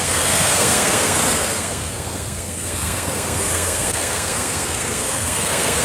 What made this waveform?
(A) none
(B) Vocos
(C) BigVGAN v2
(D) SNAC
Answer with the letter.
D